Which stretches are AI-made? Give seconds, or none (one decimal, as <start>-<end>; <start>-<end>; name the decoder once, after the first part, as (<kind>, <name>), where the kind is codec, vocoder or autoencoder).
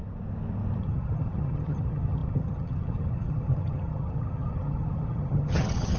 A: 0.8-6.0 (vocoder, HiFi-GAN)